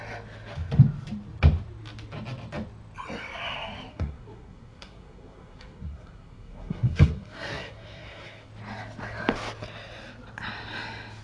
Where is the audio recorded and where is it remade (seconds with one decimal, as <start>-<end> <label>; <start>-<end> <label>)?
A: 0.0-3.9 recorded; 3.9-8.5 remade; 8.5-11.2 recorded